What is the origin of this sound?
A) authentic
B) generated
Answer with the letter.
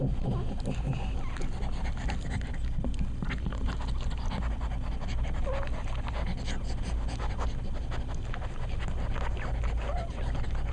A